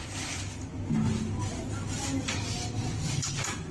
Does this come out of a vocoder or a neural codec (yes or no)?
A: no